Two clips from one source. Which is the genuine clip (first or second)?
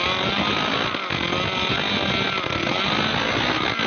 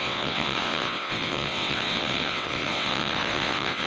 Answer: first